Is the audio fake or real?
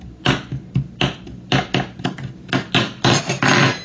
real